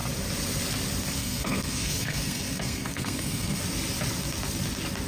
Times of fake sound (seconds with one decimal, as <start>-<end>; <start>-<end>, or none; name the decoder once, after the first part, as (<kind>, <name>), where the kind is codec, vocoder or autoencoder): 1.2-3.6 (codec, SNAC)